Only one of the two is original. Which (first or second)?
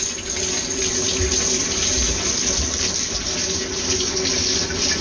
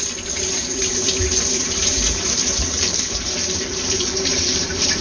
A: first